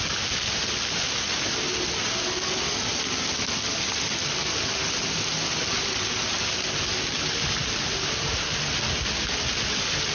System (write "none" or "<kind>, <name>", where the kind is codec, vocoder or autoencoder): none